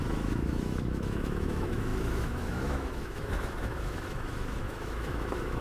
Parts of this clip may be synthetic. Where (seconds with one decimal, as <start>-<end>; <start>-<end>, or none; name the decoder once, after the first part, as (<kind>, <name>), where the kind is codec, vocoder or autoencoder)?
0.0-5.6 (autoencoder, DAC-VAE)